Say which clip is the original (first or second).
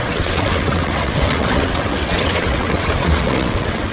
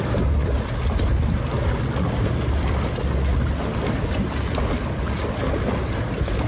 second